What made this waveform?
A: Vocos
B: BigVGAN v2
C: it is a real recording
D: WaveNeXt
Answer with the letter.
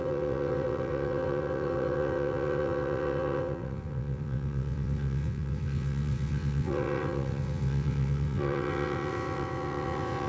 D